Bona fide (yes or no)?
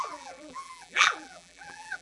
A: no